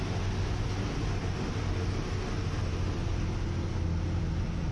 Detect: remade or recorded recorded